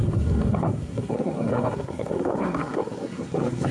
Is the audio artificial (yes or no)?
yes